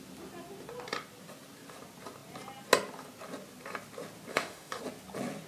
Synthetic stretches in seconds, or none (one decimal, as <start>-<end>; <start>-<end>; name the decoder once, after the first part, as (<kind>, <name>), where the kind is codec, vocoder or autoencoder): 4.3-4.8 (autoencoder, DAC-VAE)